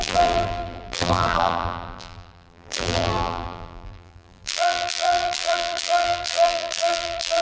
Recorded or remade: remade